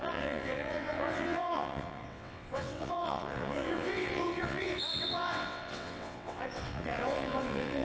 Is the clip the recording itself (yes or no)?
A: no